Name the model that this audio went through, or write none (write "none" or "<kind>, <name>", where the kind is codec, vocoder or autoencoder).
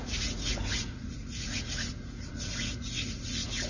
vocoder, Vocos